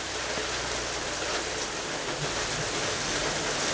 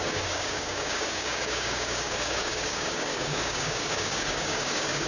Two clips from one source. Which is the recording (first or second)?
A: first